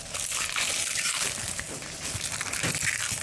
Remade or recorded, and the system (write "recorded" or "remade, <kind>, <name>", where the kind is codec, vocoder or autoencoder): recorded